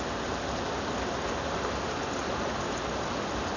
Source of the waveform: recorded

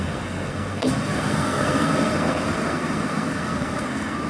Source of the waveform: remade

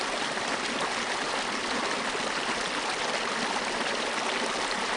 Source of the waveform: recorded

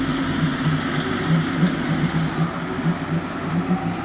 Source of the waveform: recorded